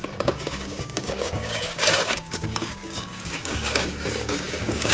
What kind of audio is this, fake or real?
fake